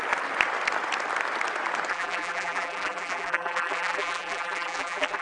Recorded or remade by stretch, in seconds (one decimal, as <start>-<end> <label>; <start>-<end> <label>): 0.0-1.9 recorded; 1.9-5.2 remade